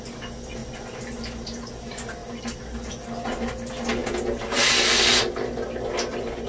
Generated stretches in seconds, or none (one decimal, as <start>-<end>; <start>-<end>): none

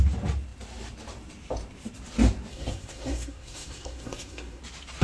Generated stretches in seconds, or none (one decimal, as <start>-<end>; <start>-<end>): 2.5-4.6

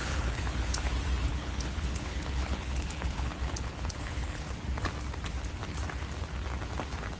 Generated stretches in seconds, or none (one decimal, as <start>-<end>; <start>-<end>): 0.0-0.9; 1.3-4.5

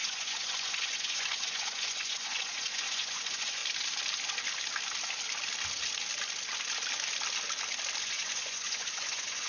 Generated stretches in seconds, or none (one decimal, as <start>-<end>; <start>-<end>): 0.0-3.6; 8.0-9.5

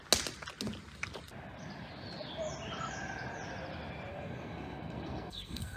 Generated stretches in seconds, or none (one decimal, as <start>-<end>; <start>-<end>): 4.1-5.8

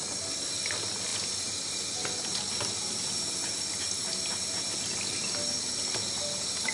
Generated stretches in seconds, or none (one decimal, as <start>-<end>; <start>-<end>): none